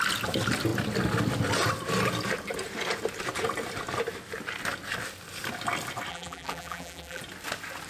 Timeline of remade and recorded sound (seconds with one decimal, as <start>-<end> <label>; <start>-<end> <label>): 0.0-6.1 recorded; 6.1-7.2 remade; 7.2-7.9 recorded